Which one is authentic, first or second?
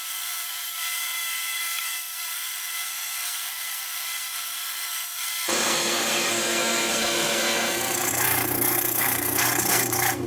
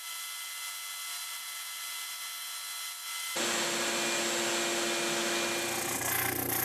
second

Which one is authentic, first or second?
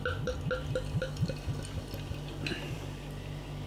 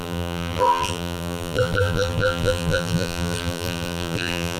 first